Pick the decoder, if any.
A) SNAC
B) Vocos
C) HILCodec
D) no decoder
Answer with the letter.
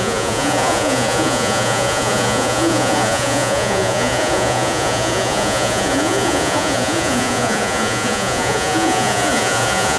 B